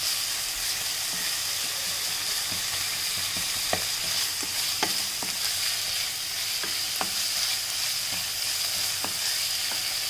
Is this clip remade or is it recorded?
recorded